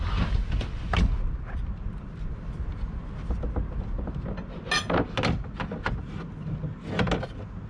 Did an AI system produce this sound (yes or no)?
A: no